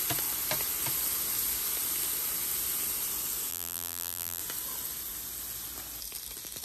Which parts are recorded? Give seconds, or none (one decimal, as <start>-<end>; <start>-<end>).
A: 0.0-3.5; 4.4-6.6